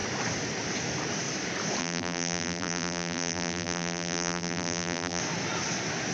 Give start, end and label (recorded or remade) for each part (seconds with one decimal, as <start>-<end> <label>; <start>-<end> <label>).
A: 0.0-1.8 recorded; 1.8-5.2 remade; 5.2-6.1 recorded